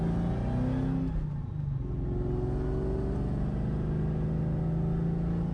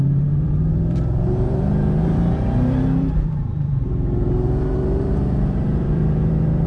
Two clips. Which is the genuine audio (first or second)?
first